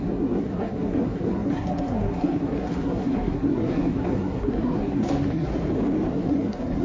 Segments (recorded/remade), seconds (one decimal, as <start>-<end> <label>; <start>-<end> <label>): 0.0-5.5 remade; 5.5-6.1 recorded; 6.1-6.8 remade